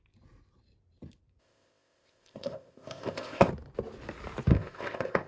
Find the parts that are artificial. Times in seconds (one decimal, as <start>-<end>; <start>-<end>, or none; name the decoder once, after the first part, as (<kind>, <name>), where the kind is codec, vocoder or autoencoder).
1.4-3.5 (codec, ZipCodec); 4.5-5.3